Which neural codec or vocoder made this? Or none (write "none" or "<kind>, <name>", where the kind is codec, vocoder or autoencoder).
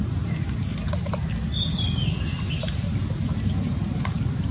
none